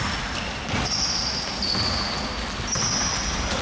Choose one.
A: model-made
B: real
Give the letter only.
B